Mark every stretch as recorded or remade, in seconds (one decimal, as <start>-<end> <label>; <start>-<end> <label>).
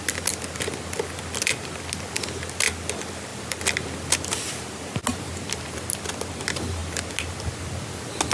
0.0-8.3 recorded